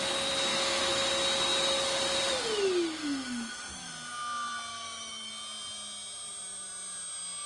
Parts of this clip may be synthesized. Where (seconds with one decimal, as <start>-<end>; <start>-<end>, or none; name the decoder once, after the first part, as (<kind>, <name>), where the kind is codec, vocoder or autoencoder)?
0.5-1.1 (autoencoder, DAC-VAE); 3.0-3.9; 4.7-5.3